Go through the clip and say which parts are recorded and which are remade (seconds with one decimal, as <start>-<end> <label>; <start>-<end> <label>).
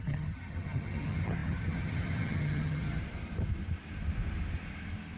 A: 0.0-3.0 remade; 3.0-5.2 recorded